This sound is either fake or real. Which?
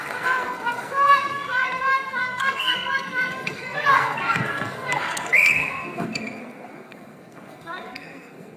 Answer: fake